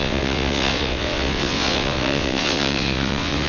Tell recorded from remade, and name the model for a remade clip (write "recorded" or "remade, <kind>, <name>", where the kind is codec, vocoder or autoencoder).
remade, vocoder, WaveNeXt